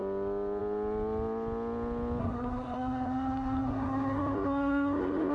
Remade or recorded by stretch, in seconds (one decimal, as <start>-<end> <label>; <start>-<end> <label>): 0.0-2.2 recorded; 2.2-5.3 remade